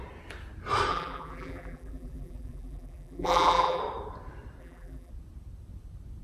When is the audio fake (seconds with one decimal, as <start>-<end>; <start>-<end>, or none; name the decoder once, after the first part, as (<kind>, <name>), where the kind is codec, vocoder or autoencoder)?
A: 0.9-3.8 (vocoder, BigVGAN v2); 4.6-5.1